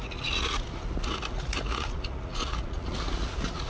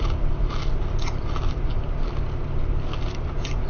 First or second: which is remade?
first